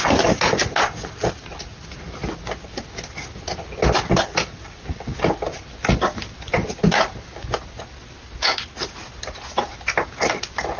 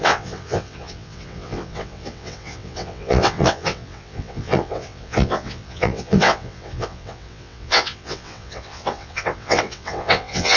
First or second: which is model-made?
second